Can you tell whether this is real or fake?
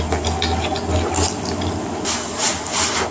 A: real